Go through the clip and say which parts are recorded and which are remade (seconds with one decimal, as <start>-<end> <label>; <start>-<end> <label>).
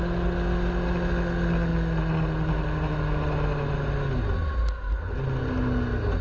0.0-6.2 recorded